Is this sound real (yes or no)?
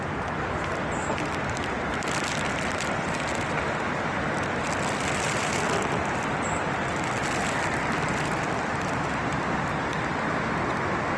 yes